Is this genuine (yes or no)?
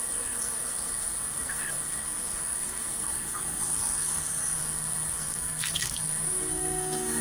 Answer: no